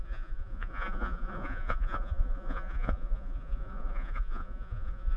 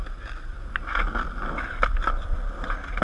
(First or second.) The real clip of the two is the second